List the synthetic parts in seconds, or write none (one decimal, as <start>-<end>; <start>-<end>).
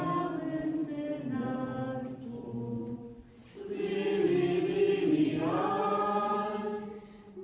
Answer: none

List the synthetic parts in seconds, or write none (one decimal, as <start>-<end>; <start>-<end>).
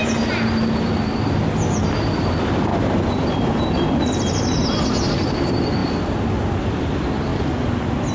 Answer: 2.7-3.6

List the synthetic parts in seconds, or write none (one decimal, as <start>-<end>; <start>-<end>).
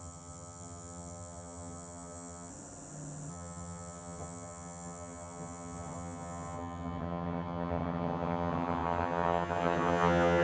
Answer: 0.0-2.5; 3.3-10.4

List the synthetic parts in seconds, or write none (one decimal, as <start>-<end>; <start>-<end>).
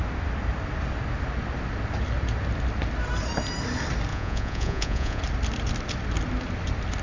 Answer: 4.1-5.2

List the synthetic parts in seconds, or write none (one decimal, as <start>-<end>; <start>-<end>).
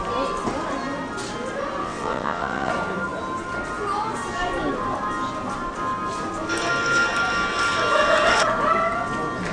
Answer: 1.8-2.7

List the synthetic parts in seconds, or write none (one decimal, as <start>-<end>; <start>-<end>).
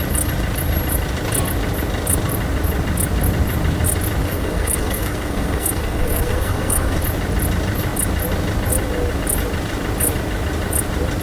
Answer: 4.2-7.0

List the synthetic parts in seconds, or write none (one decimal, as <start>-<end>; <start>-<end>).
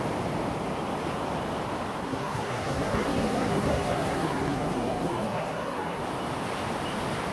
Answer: 2.0-6.0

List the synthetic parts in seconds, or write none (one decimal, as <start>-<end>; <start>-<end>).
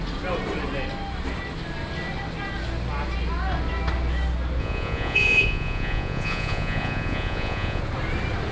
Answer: 4.6-7.8